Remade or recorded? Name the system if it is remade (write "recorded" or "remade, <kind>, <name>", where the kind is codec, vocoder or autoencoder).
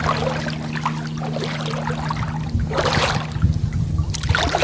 recorded